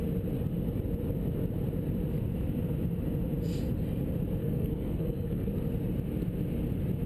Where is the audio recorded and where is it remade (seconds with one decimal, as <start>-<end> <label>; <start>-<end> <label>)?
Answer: 0.0-4.4 recorded; 4.4-5.5 remade; 5.5-7.1 recorded

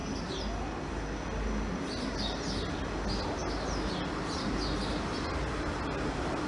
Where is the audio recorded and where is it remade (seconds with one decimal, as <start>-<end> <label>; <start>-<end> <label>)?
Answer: 0.0-6.5 recorded

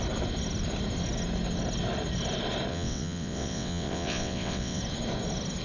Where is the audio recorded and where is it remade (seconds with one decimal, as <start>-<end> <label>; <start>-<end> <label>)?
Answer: 0.0-2.7 recorded; 2.7-4.8 remade; 4.8-5.6 recorded

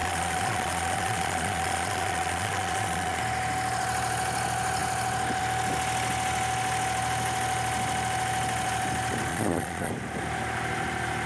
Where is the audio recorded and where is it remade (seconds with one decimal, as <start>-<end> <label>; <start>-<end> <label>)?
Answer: 0.0-3.2 remade; 3.2-9.3 recorded; 9.3-9.9 remade; 9.9-11.3 recorded

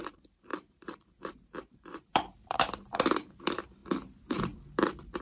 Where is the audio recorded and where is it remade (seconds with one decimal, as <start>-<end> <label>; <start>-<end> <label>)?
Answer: 0.0-0.5 recorded; 0.5-3.3 remade; 3.3-5.2 recorded

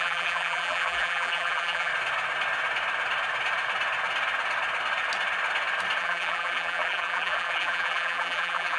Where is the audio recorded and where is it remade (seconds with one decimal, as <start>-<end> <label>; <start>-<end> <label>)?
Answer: 0.0-1.9 remade; 1.9-6.0 recorded; 6.0-8.8 remade